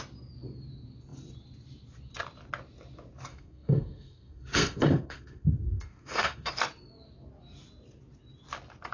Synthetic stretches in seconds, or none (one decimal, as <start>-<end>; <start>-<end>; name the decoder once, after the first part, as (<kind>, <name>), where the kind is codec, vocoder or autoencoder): 3.3-6.6 (codec, SNAC)